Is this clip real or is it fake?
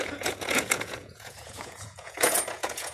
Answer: fake